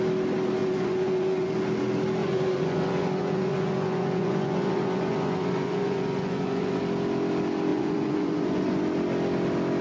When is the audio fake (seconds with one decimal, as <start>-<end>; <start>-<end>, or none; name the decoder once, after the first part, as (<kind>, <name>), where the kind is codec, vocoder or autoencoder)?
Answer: 0.6-1.5 (vocoder, Vocos); 2.2-6.8; 7.7-8.8